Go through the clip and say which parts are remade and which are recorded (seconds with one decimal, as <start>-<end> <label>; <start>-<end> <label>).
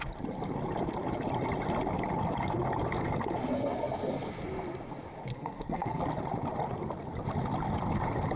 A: 0.0-5.3 recorded; 5.3-6.0 remade; 6.0-8.4 recorded